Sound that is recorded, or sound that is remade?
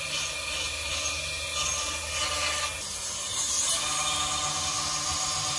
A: recorded